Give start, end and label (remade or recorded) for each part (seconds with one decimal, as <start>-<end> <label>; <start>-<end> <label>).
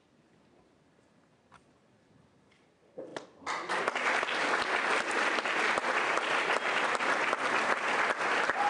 0.0-3.1 recorded; 3.1-7.0 remade; 7.0-8.7 recorded